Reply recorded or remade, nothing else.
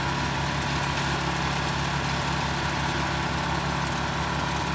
recorded